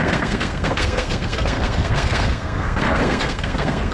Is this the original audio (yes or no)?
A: no